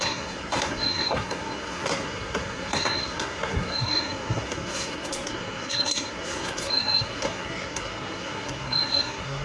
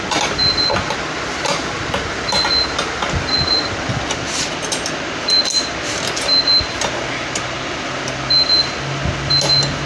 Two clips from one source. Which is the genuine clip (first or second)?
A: second